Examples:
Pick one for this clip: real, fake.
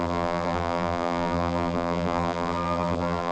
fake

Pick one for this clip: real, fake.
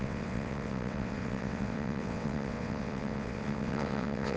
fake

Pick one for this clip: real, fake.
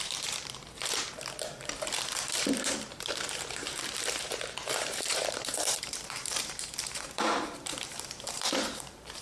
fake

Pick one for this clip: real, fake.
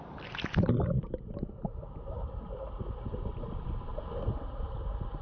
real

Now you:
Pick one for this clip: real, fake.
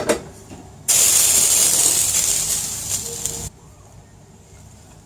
fake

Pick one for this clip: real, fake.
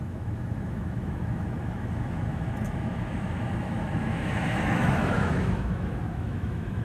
fake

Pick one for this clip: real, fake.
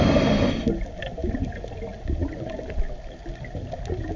real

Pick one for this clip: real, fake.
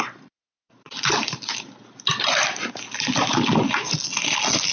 real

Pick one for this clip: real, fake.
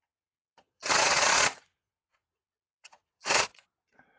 fake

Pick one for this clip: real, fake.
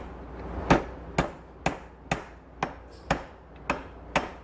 real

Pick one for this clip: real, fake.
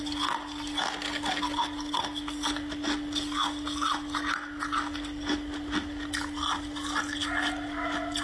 real